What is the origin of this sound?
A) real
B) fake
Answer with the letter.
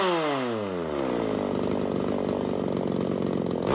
A